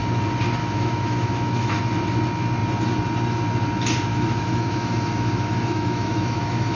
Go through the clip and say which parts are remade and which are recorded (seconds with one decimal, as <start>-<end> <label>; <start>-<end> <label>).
0.0-0.6 recorded; 0.6-1.8 remade; 1.8-4.1 recorded; 4.1-6.8 remade